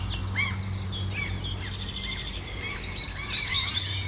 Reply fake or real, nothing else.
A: real